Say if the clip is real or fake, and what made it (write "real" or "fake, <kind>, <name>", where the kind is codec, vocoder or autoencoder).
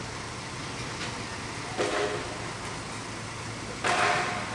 real